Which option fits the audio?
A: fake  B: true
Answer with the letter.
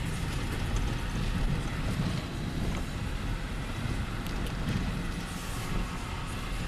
B